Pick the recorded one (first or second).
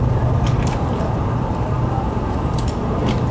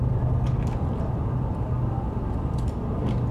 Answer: second